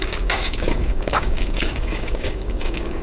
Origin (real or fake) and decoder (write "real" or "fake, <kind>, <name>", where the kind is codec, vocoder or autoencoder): fake, codec, DAC